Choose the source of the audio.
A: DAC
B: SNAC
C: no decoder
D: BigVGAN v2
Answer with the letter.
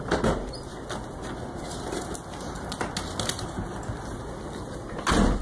C